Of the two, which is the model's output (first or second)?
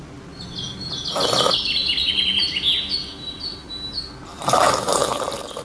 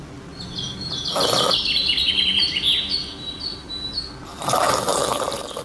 second